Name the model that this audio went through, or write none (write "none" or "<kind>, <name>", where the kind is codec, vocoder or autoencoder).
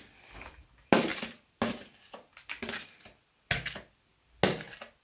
none